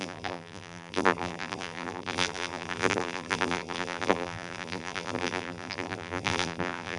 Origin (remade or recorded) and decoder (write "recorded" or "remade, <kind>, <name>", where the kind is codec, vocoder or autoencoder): remade, vocoder, BigVGAN v2